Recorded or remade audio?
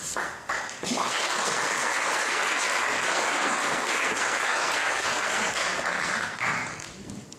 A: remade